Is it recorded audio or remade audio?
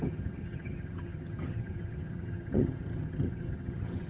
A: remade